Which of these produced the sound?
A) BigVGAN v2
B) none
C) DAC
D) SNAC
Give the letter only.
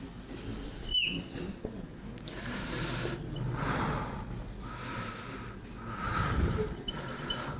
B